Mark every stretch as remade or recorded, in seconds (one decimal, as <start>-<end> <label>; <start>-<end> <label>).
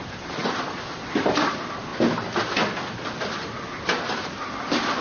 0.0-1.9 remade; 1.9-5.0 recorded